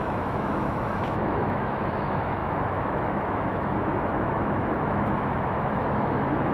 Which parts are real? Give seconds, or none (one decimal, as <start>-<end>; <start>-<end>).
none